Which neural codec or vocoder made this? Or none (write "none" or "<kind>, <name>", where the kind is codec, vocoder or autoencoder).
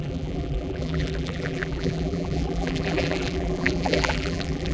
vocoder, BigVGAN v2